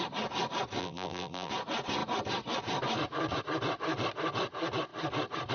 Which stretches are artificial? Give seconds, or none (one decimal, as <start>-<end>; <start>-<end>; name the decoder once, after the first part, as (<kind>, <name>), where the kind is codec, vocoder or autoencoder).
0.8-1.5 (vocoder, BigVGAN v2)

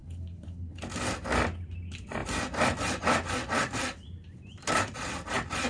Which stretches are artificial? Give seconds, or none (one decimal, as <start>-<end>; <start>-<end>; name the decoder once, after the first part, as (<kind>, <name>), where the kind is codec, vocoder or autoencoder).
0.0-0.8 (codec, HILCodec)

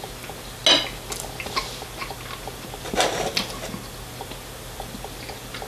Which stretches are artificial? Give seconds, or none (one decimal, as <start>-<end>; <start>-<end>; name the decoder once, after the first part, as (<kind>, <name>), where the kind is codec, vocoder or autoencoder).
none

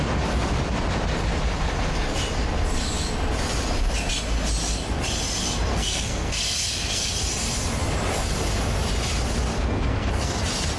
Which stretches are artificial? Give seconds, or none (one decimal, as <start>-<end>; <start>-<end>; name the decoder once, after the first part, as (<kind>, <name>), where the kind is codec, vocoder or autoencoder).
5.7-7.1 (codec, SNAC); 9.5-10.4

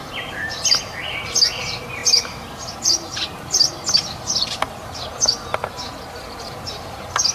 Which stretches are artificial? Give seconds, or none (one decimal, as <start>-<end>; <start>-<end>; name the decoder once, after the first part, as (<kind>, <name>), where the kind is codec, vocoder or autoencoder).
0.0-3.7 (vocoder, BigVGAN v2); 6.4-7.3